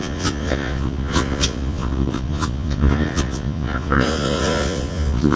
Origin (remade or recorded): remade